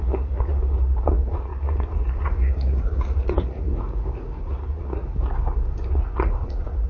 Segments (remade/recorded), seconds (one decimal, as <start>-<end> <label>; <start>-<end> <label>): 0.0-3.7 remade; 3.7-4.4 recorded; 4.4-5.0 remade; 5.0-5.9 recorded; 5.9-6.9 remade